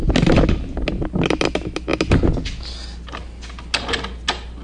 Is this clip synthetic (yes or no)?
no